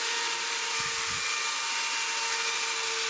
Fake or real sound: real